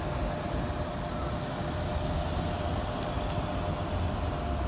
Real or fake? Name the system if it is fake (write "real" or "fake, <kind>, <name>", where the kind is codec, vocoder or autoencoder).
real